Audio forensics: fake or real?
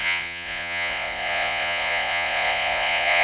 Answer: fake